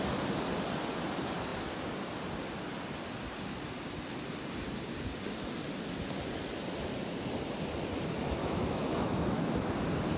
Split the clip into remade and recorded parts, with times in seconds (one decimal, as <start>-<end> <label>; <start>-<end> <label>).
0.0-8.4 recorded; 8.4-9.7 remade; 9.7-10.2 recorded

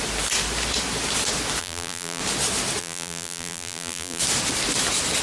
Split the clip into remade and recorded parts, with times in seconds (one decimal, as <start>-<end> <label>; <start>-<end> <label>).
0.0-1.6 recorded; 1.6-2.2 remade; 2.2-2.8 recorded; 2.8-4.2 remade; 4.2-5.2 recorded

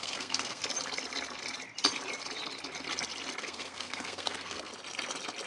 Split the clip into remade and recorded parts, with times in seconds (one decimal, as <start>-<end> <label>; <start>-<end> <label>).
0.0-0.6 remade; 0.6-3.4 recorded; 3.4-4.7 remade; 4.7-5.5 recorded

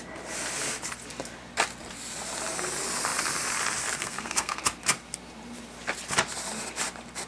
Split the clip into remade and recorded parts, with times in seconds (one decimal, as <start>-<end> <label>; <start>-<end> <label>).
0.0-4.0 recorded; 4.0-4.6 remade; 4.6-7.3 recorded

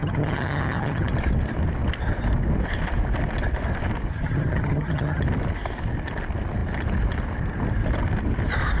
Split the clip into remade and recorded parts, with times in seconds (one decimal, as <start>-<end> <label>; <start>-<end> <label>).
0.0-1.1 remade; 1.1-4.1 recorded; 4.1-5.2 remade; 5.2-8.8 recorded

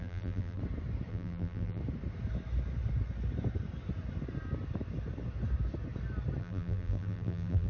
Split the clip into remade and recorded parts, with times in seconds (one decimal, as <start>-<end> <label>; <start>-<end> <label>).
0.0-0.6 remade; 0.6-1.1 recorded; 1.1-1.8 remade; 1.8-6.4 recorded; 6.4-7.7 remade